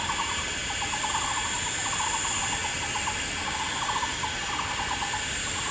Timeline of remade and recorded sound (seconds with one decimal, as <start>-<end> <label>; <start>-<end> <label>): 0.0-5.7 recorded